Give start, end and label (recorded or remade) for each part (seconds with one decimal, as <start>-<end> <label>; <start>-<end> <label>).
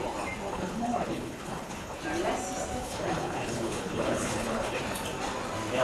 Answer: 0.0-0.5 recorded; 0.5-2.0 remade; 2.0-2.8 recorded; 2.8-4.8 remade; 4.8-5.8 recorded